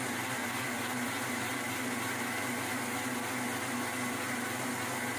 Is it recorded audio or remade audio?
recorded